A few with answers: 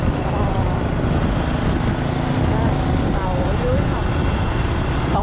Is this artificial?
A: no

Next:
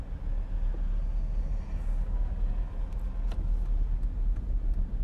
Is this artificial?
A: no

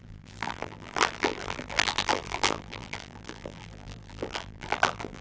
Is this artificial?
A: yes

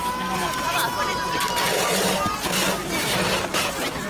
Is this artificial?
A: no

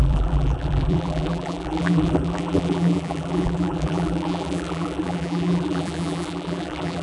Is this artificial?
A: yes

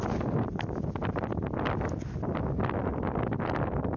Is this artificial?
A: no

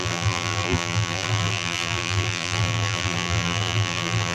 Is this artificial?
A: yes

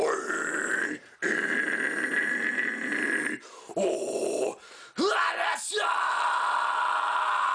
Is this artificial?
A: no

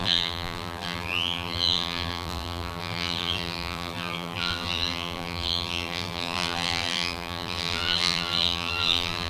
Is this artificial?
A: yes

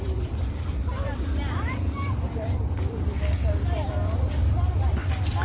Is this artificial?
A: yes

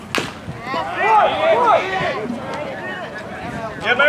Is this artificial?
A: no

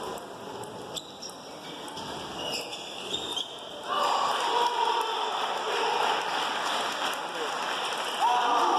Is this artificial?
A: no